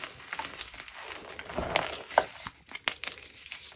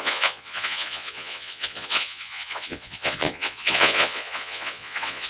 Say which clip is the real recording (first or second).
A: first